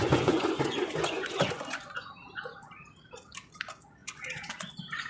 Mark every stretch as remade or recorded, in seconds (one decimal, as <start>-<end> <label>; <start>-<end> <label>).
0.0-2.1 remade; 2.1-4.0 recorded; 4.0-4.5 remade; 4.5-5.1 recorded